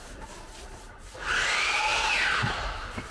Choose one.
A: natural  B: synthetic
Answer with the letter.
A